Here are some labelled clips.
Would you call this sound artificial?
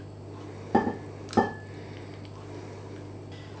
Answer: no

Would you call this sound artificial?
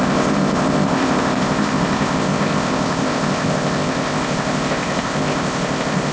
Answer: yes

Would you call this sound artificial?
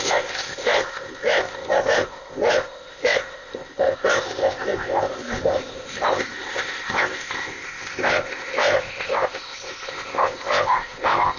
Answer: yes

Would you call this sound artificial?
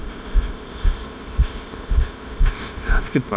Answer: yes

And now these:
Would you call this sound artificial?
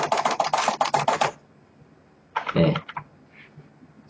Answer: no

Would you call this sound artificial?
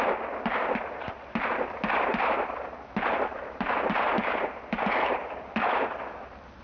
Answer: no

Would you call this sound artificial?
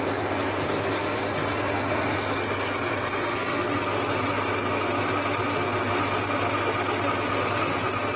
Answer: no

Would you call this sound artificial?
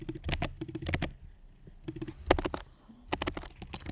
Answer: no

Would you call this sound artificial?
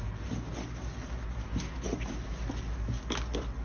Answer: no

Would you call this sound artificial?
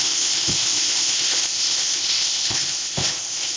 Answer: yes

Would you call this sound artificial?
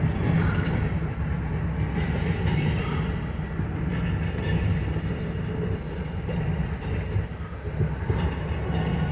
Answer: no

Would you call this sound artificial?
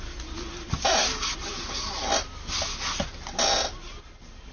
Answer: no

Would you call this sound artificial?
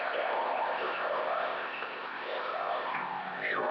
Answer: yes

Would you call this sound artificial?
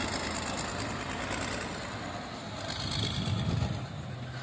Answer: no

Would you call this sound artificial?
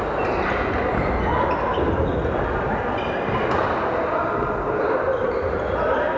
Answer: no